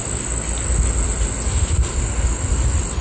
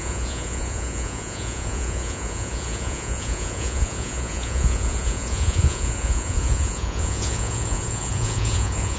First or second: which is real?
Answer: first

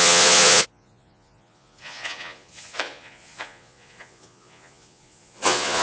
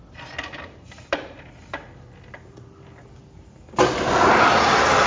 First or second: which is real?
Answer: second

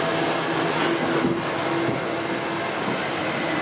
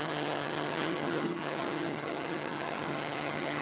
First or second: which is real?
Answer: first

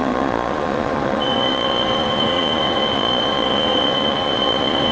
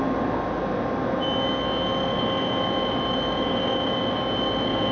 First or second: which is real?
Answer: second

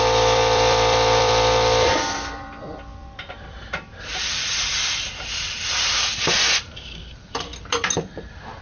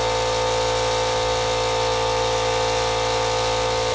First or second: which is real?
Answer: second